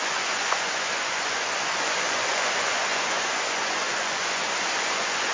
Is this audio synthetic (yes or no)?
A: yes